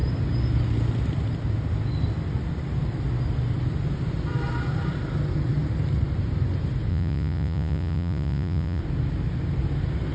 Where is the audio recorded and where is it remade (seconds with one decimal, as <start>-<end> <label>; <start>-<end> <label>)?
0.0-6.9 recorded; 6.9-8.8 remade; 8.8-10.1 recorded